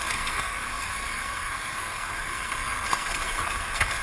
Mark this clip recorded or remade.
remade